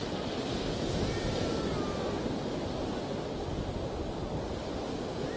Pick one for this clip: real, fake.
real